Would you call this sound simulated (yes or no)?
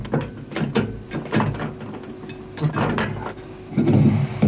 no